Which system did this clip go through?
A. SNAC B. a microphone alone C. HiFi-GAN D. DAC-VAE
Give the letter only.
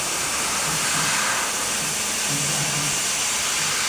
B